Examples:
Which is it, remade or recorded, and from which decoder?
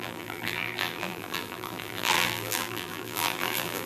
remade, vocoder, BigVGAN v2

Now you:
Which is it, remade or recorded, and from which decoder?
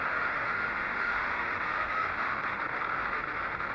remade, autoencoder, DAC-VAE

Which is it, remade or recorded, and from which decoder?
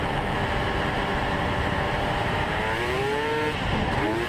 remade, vocoder, BigVGAN v2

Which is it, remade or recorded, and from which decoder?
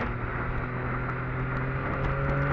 recorded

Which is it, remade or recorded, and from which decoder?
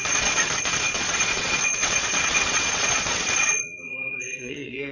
remade, vocoder, Vocos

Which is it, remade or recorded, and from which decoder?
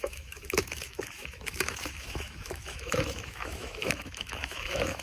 remade, autoencoder, DAC-VAE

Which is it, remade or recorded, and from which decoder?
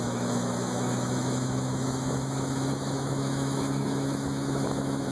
remade, autoencoder, DAC-VAE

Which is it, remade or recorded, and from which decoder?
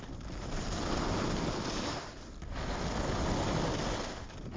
recorded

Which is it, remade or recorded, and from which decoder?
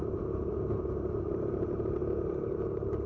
remade, vocoder, BigVGAN v2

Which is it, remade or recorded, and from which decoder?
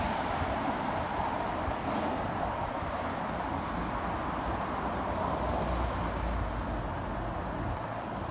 recorded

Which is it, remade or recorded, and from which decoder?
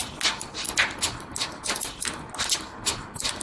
recorded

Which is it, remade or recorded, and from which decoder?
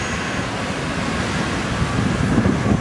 recorded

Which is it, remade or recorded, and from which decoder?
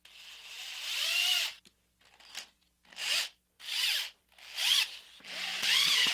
recorded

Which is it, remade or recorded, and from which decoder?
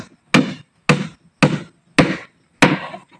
recorded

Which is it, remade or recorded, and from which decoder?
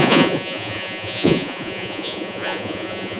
remade, vocoder, Vocos